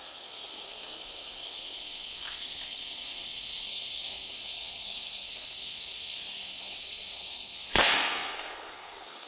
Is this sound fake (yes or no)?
yes